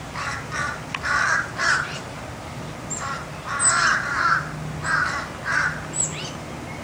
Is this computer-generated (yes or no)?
no